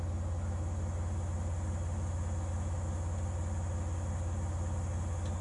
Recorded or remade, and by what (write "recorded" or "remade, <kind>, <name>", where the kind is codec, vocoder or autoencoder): recorded